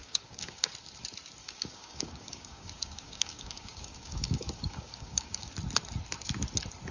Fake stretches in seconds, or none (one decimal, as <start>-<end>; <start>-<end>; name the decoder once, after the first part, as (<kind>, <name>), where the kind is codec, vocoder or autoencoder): 0.0-0.7 (codec, DAC); 1.4-5.5